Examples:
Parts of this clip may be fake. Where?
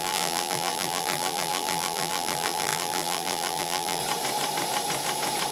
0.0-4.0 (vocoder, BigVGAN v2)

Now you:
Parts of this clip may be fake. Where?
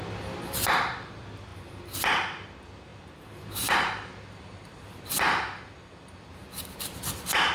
2.9-4.9 (vocoder, BigVGAN v2); 6.4-7.5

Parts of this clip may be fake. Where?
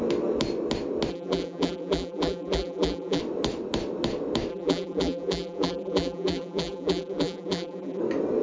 1.1-3.2 (vocoder, BigVGAN v2); 4.5-8.0